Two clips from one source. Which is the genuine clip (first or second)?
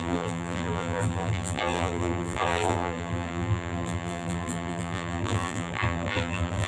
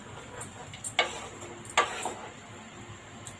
second